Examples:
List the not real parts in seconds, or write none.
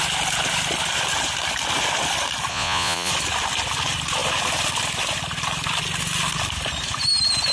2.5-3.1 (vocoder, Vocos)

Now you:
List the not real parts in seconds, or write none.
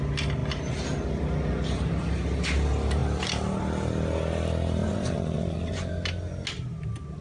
4.8-5.9 (vocoder, Vocos)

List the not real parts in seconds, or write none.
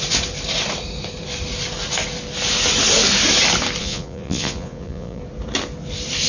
3.8-5.2 (vocoder, Vocos)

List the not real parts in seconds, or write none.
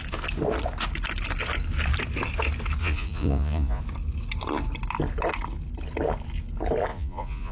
2.8-3.8 (vocoder, Vocos); 6.9-7.5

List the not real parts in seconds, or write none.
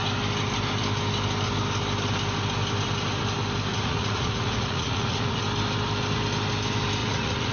3.7-5.4 (vocoder, Vocos); 7.0-7.5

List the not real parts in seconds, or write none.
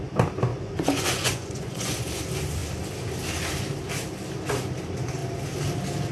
0.5-2.2 (vocoder, Vocos)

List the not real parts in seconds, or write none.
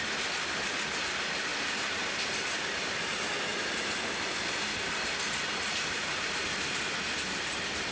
none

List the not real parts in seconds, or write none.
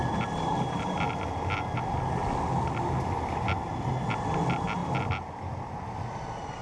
none